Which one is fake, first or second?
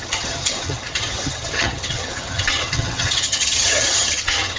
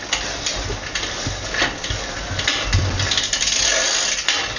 first